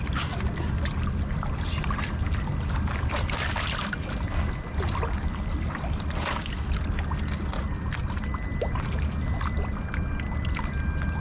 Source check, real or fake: real